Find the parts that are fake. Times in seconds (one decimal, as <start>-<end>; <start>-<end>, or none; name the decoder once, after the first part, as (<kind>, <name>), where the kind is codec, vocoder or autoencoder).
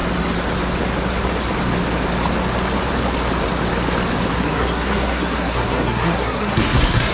4.3-7.1 (codec, SNAC)